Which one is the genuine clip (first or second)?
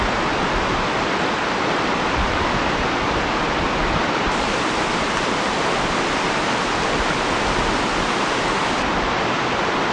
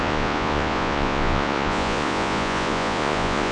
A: first